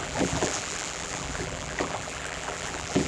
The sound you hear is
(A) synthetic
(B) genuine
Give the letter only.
A